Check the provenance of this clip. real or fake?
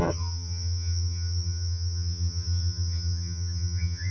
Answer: fake